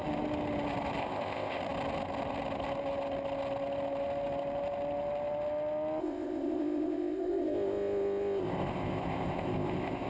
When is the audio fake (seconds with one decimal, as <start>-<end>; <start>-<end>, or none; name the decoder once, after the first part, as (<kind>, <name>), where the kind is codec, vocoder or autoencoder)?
1.0-1.6 (codec, ZipCodec); 6.0-10.1